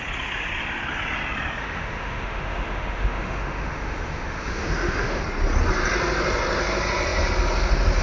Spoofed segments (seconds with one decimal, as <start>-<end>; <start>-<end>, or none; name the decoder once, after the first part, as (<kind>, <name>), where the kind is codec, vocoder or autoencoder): 1.6-5.2 (autoencoder, DAC-VAE)

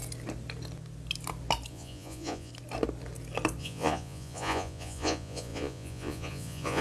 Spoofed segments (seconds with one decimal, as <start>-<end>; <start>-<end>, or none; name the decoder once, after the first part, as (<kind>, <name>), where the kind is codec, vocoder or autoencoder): 1.7-2.5 (vocoder, Vocos); 3.6-6.8

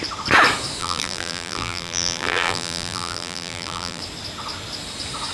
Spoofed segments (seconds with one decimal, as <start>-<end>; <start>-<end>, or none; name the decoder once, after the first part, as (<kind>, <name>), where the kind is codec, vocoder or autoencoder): 0.8-4.0 (vocoder, BigVGAN v2)

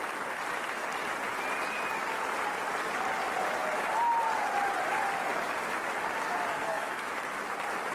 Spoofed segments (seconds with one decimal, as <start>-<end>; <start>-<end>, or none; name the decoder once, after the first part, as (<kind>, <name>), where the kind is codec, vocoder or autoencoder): 6.5-7.1 (codec, SNAC)

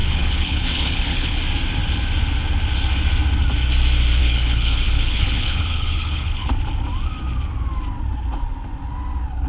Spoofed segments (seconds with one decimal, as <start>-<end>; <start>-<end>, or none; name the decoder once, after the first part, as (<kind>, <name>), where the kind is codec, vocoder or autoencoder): 0.0-1.4 (codec, HILCodec); 4.2-6.5

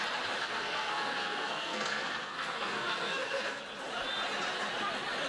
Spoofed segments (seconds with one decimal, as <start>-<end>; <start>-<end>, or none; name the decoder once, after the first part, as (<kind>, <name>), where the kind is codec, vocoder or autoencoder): 0.4-3.6 (codec, SNAC)

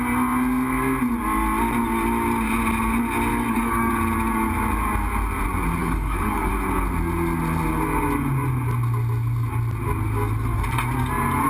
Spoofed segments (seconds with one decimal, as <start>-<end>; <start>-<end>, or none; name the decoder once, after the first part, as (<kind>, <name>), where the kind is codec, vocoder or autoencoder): 3.3-3.9 (codec, DAC); 5.8-6.5